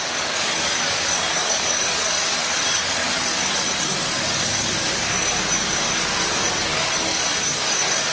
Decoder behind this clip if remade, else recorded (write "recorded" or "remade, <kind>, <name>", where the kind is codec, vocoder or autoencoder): remade, codec, DAC